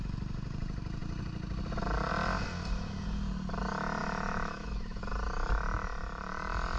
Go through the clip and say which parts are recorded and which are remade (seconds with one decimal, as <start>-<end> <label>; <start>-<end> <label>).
0.0-4.0 recorded; 4.0-5.0 remade; 5.0-6.8 recorded